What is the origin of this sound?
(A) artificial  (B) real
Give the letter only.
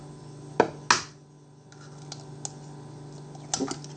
B